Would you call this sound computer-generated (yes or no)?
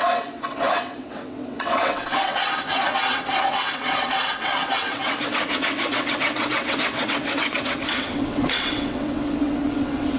yes